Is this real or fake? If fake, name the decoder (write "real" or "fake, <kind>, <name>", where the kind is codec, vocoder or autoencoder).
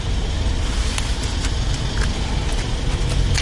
real